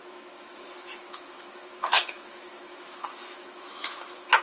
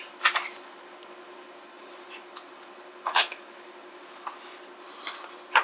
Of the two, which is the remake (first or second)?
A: first